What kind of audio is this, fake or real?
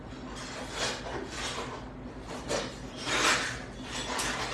real